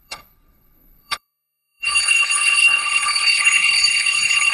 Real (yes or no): no